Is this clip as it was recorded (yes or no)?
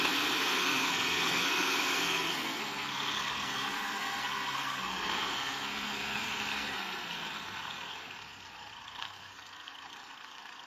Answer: no